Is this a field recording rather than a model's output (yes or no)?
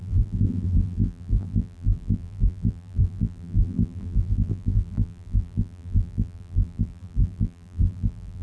no